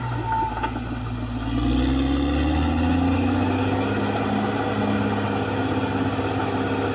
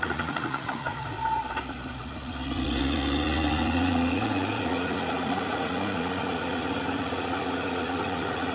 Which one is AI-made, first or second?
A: second